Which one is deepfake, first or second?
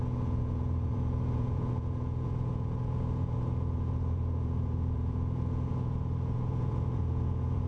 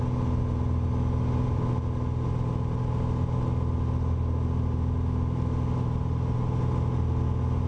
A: first